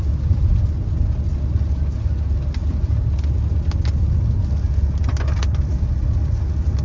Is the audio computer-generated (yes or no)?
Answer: no